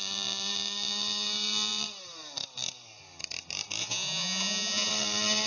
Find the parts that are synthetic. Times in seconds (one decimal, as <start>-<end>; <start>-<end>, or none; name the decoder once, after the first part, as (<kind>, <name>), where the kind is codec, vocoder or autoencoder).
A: 3.8-4.9 (vocoder, Vocos)